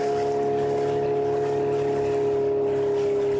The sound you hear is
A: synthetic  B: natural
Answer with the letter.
B